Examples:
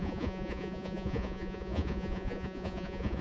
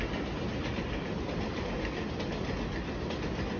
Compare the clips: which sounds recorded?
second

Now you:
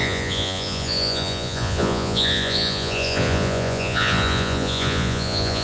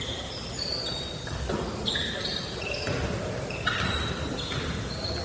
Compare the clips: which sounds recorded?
second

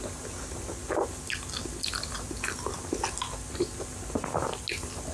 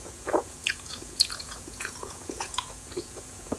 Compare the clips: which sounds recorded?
first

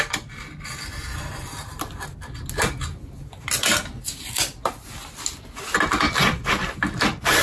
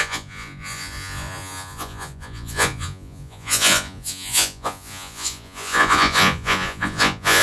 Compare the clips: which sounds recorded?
first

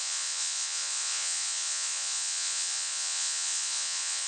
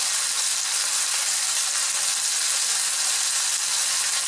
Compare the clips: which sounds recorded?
second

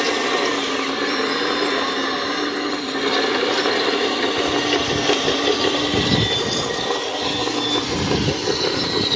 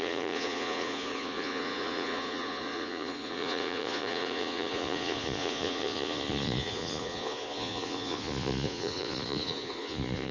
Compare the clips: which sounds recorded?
first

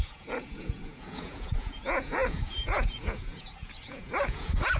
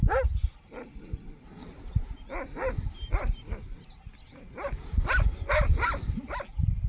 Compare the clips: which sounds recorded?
second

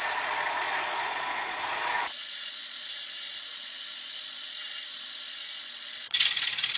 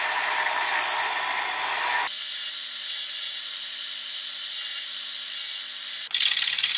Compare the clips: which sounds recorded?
second